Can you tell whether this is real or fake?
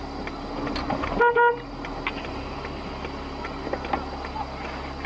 real